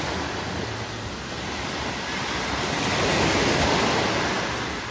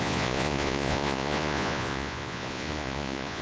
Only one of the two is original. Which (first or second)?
first